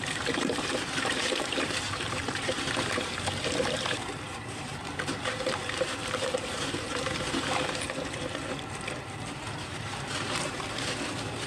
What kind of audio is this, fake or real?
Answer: fake